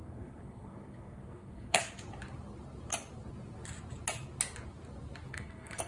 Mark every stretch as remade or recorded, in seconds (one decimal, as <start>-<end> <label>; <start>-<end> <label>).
0.0-1.8 remade; 1.8-5.3 recorded; 5.3-5.9 remade